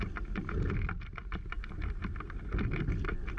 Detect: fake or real real